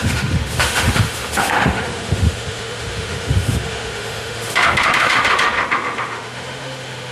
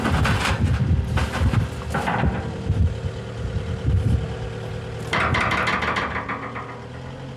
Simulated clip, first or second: first